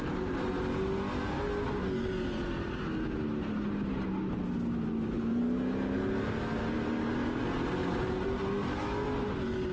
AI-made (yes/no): no